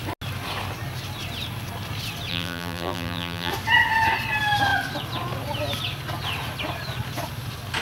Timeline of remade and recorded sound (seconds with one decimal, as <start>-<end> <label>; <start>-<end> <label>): 0.0-2.3 recorded; 2.3-3.5 remade; 3.5-7.8 recorded